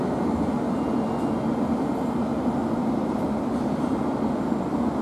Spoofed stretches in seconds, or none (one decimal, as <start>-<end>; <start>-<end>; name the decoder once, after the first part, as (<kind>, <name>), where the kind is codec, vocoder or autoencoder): 2.6-4.1 (vocoder, BigVGAN v2)